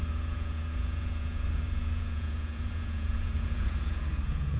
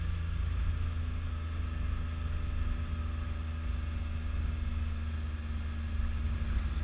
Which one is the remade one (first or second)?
first